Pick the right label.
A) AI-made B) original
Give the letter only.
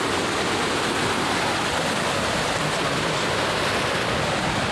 A